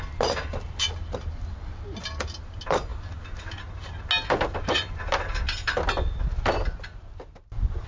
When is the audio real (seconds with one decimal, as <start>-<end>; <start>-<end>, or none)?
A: 0.0-7.9